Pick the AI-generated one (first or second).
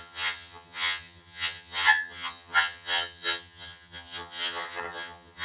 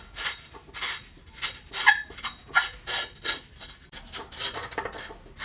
first